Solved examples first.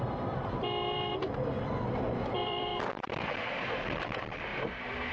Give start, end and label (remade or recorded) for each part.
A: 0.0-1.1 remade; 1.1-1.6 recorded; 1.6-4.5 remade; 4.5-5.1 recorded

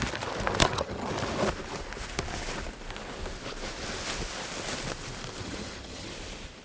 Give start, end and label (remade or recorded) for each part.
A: 0.0-0.6 recorded; 0.6-1.1 remade; 1.1-5.4 recorded; 5.4-6.1 remade; 6.1-6.6 recorded

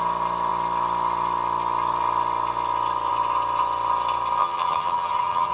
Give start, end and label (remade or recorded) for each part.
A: 0.0-4.4 recorded; 4.4-5.5 remade

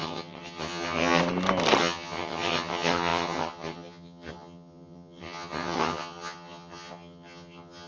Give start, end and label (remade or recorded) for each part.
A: 0.0-1.2 remade; 1.2-1.8 recorded; 1.8-7.9 remade

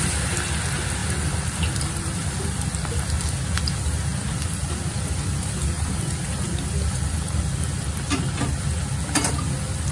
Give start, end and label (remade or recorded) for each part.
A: 0.0-1.0 recorded; 1.0-2.6 remade; 2.6-4.1 recorded; 4.1-7.4 remade; 7.4-9.9 recorded

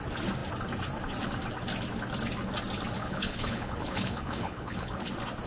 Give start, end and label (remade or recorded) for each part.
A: 0.0-3.0 recorded; 3.0-5.1 remade; 5.1-5.5 recorded

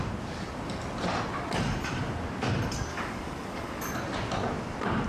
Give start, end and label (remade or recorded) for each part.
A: 0.0-2.9 recorded; 2.9-3.8 remade; 3.8-5.1 recorded